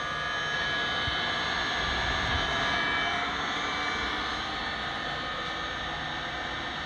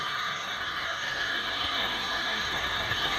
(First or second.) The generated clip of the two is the second